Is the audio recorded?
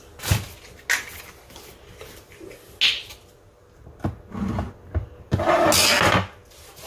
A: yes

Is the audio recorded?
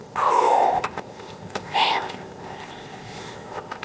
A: no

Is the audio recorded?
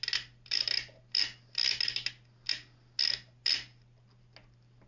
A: yes